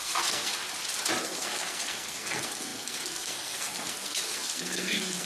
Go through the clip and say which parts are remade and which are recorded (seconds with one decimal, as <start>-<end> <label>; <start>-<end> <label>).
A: 0.0-0.6 remade; 0.6-1.2 recorded; 1.2-5.3 remade

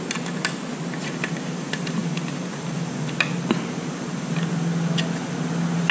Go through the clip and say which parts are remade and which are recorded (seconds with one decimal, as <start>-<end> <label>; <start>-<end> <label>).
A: 0.0-5.9 recorded

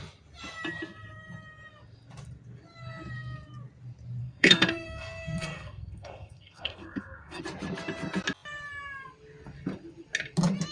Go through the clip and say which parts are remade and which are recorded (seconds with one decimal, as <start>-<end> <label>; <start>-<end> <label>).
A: 0.0-4.2 recorded; 4.2-7.4 remade; 7.4-10.7 recorded

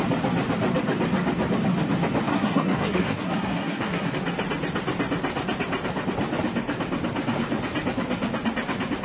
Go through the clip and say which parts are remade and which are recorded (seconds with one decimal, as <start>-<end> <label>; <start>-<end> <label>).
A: 0.0-2.3 recorded; 2.3-4.1 remade; 4.1-9.0 recorded